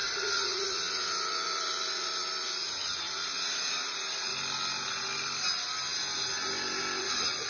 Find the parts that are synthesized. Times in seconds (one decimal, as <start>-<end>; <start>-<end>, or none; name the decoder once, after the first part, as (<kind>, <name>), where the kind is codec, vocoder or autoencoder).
0.0-4.3 (vocoder, Vocos); 7.0-7.5